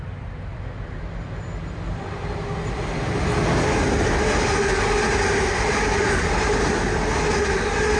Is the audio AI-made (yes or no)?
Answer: no